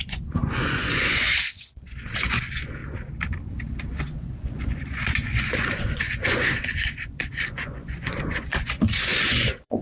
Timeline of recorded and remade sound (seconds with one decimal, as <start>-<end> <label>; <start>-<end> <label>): 0.0-2.8 remade; 2.8-4.0 recorded; 4.0-9.8 remade

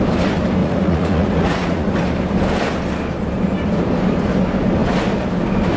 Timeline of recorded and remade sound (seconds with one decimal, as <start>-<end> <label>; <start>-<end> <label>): 0.0-0.6 recorded; 0.6-1.9 remade; 1.9-5.8 recorded

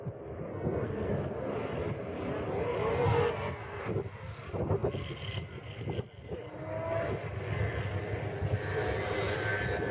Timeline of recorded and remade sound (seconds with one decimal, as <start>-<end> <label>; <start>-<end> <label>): 0.0-0.5 recorded; 0.5-1.1 remade; 1.1-2.9 recorded; 2.9-3.8 remade; 3.8-9.9 recorded

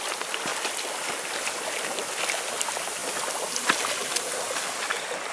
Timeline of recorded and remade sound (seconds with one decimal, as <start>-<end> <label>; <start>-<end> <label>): 0.0-5.3 recorded

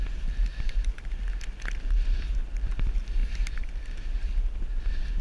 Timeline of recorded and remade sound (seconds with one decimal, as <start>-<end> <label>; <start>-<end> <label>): 0.0-3.2 recorded; 3.2-4.8 remade; 4.8-5.2 recorded

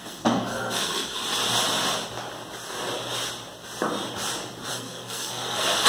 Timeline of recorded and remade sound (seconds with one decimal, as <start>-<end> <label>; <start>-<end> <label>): 0.0-1.2 remade; 1.2-4.7 recorded; 4.7-5.9 remade